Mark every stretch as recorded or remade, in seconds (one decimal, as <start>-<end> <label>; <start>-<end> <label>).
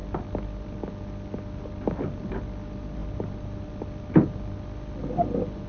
0.0-5.7 recorded